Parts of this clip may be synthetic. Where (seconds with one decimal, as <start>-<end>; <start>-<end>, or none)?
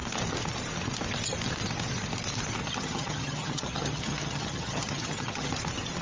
2.6-5.5